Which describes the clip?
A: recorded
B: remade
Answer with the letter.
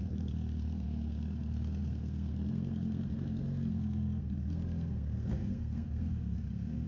B